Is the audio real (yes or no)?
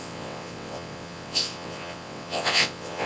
no